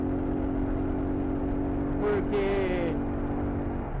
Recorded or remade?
recorded